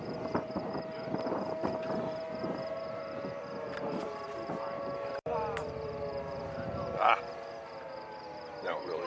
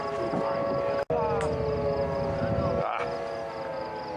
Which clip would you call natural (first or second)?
second